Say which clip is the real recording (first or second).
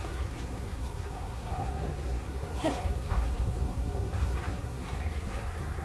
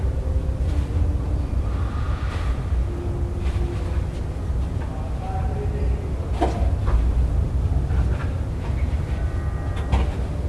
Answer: second